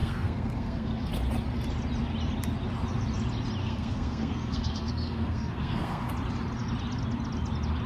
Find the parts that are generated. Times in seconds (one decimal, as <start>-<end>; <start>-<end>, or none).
0.0-1.1; 3.6-6.1